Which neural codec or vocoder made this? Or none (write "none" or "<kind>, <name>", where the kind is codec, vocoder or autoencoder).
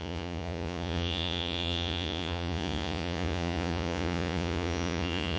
vocoder, Vocos